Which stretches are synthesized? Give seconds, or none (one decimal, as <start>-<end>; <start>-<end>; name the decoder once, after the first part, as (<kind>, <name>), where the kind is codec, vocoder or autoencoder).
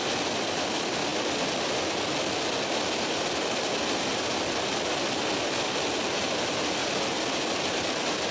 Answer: none